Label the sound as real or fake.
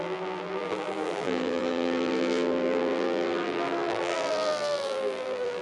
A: fake